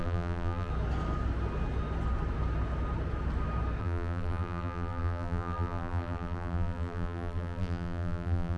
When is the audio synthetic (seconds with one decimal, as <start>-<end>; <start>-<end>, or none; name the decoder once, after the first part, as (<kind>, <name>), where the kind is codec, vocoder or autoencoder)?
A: 0.0-0.7 (vocoder, BigVGAN v2); 3.8-8.6